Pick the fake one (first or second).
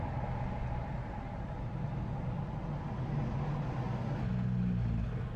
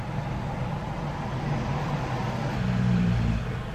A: second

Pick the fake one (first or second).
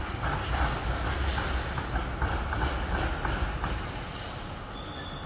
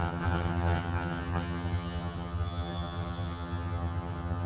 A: second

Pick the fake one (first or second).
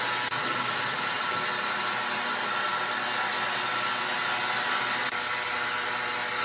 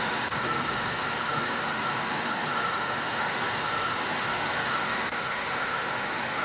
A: second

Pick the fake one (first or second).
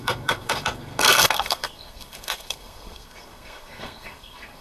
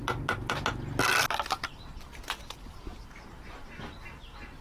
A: first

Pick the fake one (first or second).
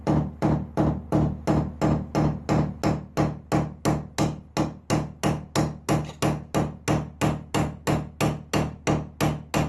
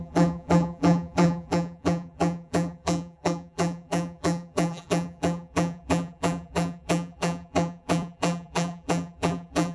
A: second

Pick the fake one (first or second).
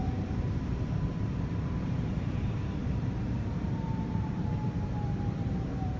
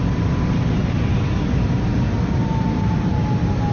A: first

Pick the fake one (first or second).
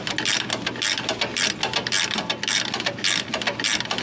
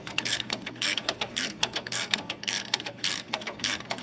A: second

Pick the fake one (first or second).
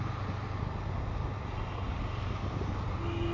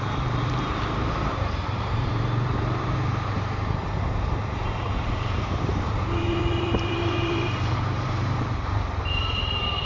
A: second